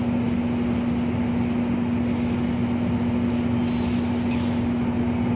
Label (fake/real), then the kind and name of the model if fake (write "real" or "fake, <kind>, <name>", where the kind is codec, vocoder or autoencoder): real